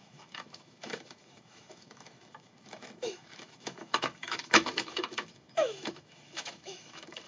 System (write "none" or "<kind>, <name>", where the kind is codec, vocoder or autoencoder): autoencoder, DAC-VAE